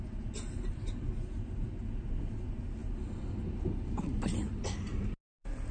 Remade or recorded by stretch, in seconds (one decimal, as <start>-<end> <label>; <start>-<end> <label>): 0.0-5.7 recorded